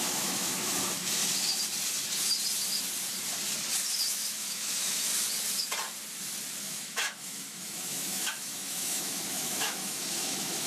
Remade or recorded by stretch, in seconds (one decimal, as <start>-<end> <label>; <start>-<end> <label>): 0.0-1.2 remade; 1.2-4.1 recorded; 4.1-5.1 remade; 5.1-6.6 recorded; 6.6-10.7 remade